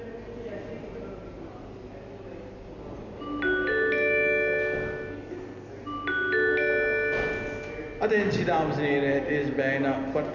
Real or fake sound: real